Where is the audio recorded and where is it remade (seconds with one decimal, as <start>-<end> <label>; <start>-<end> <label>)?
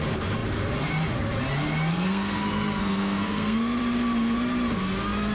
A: 0.0-1.9 recorded; 1.9-3.8 remade; 3.8-5.3 recorded